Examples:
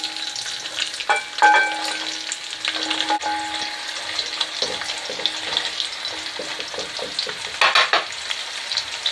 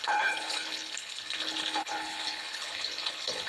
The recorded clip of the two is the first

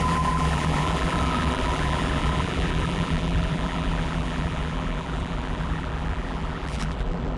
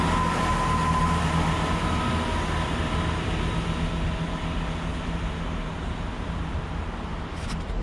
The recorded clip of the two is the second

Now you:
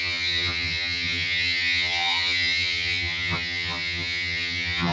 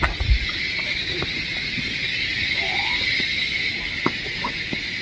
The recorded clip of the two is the second